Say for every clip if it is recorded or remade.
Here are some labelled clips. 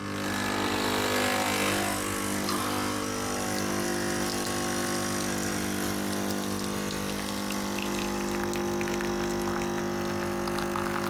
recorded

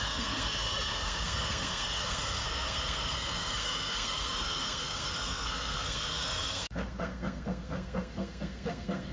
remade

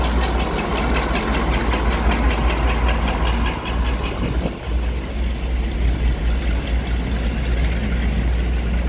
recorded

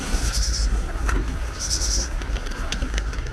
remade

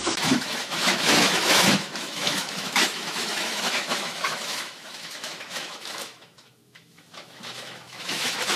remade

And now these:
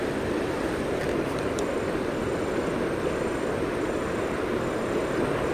recorded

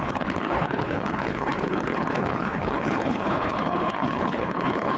remade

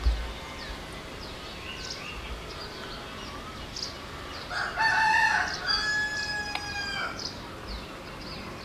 recorded